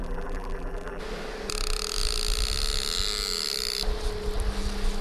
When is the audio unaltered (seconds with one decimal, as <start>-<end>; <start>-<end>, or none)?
1.0-5.0